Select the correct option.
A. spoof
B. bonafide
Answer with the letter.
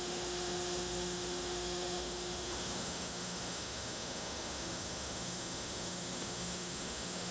A